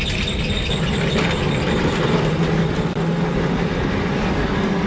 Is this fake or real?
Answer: real